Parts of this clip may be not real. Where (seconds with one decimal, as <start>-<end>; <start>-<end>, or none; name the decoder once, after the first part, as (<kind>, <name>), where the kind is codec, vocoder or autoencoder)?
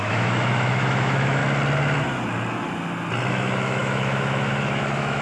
0.0-1.4 (autoencoder, DAC-VAE); 3.3-5.2